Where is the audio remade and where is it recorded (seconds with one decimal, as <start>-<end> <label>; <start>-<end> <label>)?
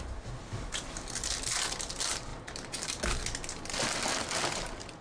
0.0-5.0 recorded